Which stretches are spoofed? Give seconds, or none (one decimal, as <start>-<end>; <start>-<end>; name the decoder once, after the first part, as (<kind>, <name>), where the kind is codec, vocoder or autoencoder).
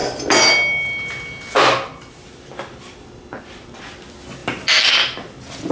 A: none